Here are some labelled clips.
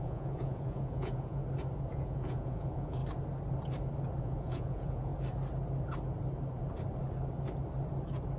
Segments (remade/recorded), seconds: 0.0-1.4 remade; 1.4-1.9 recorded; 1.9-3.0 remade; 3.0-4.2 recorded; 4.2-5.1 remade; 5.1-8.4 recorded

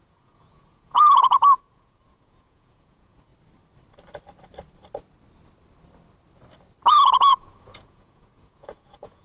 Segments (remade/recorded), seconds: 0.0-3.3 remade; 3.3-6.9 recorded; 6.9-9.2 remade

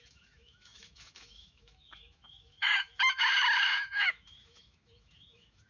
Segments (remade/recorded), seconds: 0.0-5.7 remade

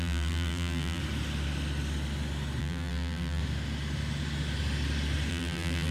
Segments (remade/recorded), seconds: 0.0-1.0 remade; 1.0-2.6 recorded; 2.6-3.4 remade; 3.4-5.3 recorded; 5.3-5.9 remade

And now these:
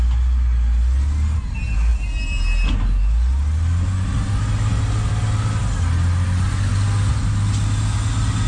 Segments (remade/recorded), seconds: 0.0-8.5 recorded

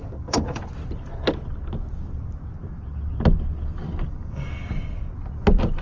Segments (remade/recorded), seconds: 0.0-0.6 remade; 0.6-4.1 recorded; 4.1-5.0 remade; 5.0-5.8 recorded

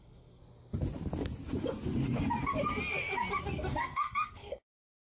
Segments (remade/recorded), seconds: 0.0-0.4 remade; 0.4-3.4 recorded; 3.4-5.0 remade

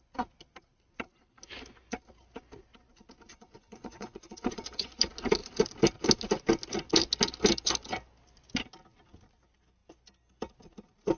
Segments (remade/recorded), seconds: 0.0-3.3 recorded; 3.3-5.0 remade; 5.0-11.2 recorded